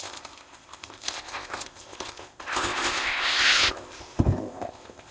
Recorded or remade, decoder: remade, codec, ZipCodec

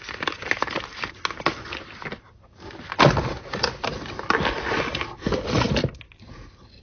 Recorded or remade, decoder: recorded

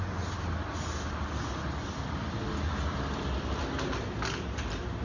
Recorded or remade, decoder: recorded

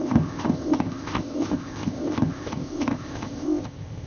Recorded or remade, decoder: remade, codec, ZipCodec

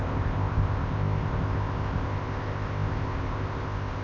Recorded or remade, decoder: remade, codec, ZipCodec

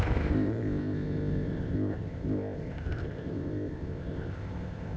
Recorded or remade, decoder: remade, codec, ZipCodec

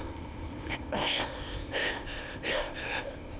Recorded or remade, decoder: remade, codec, ZipCodec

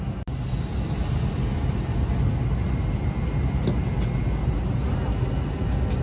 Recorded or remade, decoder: recorded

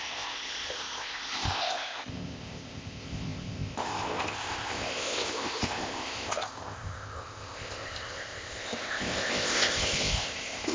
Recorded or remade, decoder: remade, codec, ZipCodec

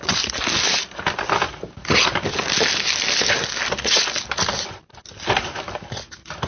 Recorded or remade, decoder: recorded